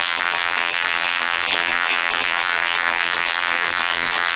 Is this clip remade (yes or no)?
yes